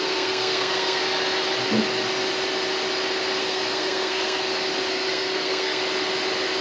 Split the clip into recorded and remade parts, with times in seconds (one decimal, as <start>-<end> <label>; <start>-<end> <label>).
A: 0.0-1.0 remade; 1.0-3.4 recorded; 3.4-4.4 remade; 4.4-4.9 recorded; 4.9-5.8 remade; 5.8-6.6 recorded